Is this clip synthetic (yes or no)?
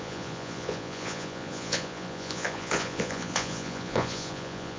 yes